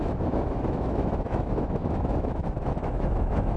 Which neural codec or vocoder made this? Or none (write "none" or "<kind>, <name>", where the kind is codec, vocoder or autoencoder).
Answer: autoencoder, DAC-VAE